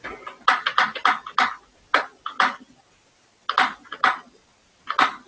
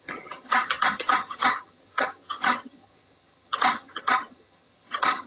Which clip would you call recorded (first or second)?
first